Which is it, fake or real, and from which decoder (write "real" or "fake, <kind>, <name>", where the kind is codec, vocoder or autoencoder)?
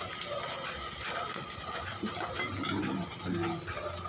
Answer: real